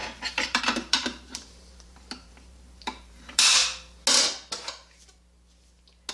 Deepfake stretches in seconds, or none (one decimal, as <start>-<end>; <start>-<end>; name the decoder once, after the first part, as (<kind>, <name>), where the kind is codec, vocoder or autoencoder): 0.0-3.6 (vocoder, BigVGAN v2)